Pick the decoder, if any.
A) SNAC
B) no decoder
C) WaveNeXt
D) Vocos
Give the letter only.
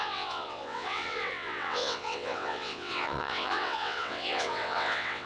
C